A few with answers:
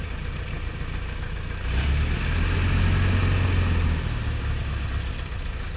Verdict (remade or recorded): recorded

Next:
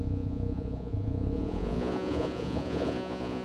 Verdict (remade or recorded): remade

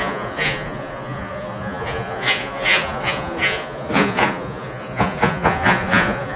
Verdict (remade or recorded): remade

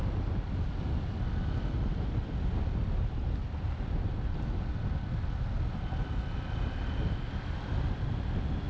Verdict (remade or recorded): recorded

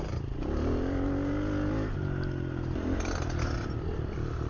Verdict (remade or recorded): recorded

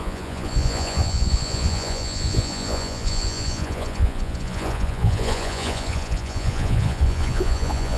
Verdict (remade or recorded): remade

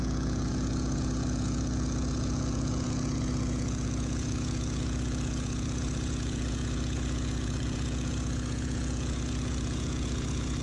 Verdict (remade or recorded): remade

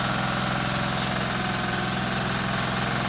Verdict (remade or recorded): recorded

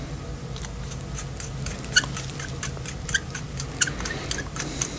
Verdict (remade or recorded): recorded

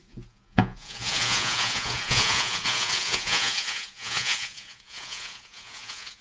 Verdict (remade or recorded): remade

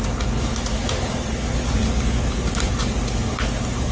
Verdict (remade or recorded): recorded